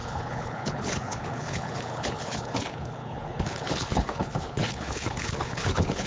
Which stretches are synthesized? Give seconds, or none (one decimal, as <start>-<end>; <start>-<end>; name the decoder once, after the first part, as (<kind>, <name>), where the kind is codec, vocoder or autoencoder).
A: 0.0-6.1 (codec, HILCodec)